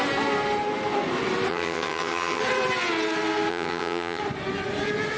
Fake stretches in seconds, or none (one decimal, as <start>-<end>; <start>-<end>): 1.5-2.4; 3.5-4.2